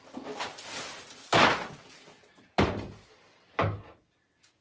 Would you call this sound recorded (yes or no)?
yes